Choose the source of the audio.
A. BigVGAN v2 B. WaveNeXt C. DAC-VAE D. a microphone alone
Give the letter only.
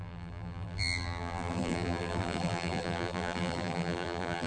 A